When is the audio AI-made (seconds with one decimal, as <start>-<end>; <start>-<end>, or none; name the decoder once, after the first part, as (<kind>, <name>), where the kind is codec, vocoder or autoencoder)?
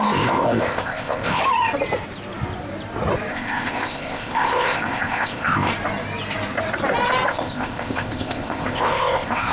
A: 0.0-1.4 (codec, ZipCodec); 3.3-5.7; 7.3-9.5